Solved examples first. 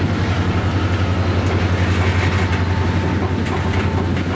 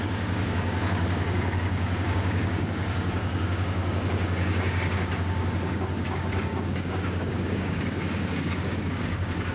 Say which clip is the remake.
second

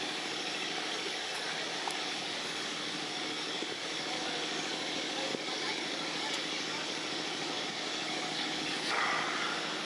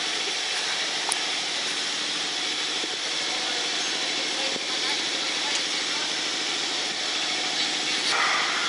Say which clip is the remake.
first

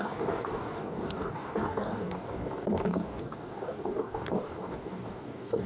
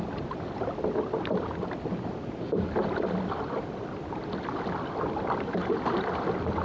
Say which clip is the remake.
first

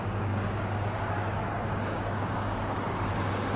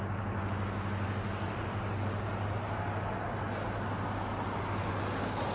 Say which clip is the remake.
first